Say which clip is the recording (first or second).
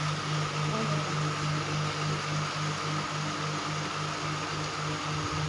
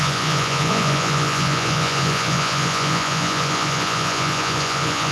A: first